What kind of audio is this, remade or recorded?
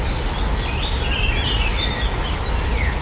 recorded